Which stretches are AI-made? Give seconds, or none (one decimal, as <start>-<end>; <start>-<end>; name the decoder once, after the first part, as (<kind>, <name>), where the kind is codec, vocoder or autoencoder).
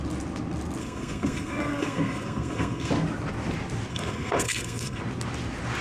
0.8-2.9 (codec, SNAC); 3.9-5.0